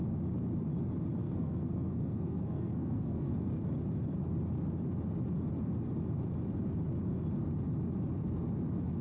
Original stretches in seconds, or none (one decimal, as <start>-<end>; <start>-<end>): 0.0-1.2; 3.6-9.0